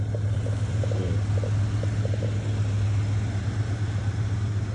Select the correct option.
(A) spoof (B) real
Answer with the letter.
B